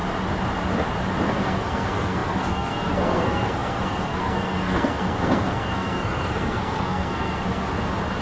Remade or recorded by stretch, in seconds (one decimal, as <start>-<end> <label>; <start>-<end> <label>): 0.0-1.3 recorded; 1.3-7.7 remade; 7.7-8.2 recorded